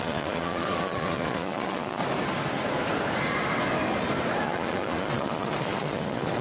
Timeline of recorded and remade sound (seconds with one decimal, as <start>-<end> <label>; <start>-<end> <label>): 0.0-2.0 remade; 2.0-4.4 recorded; 4.4-6.4 remade